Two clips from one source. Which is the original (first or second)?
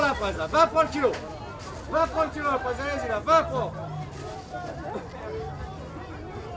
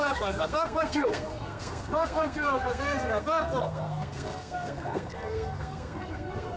first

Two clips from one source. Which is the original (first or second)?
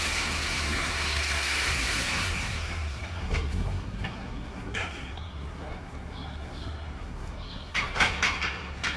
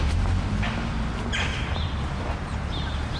second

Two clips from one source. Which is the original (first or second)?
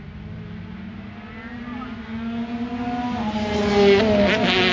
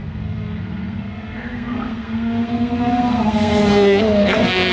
first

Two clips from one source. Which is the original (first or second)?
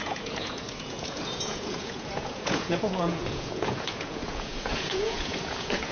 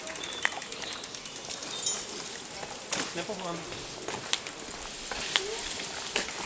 second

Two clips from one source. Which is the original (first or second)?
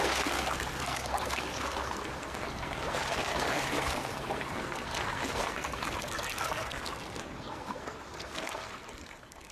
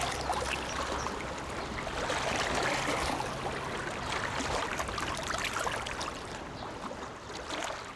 second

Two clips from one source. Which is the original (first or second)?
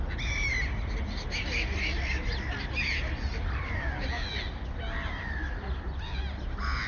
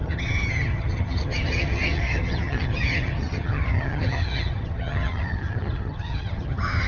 first